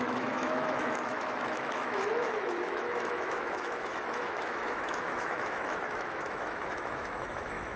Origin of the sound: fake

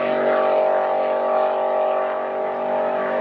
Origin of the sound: real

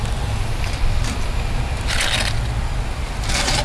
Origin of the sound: real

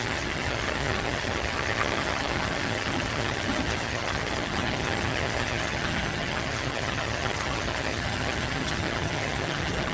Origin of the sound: fake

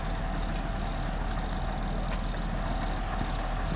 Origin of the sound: real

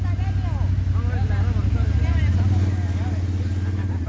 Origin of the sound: real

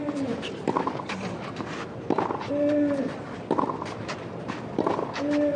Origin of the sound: real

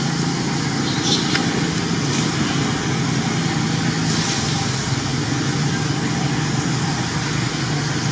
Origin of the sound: real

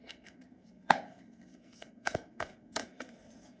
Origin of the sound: fake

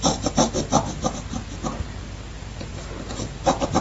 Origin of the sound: real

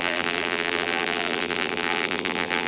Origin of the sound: fake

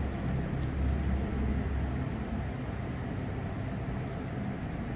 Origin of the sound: real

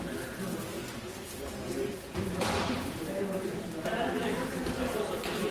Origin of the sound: real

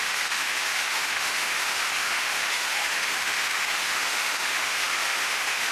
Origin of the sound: fake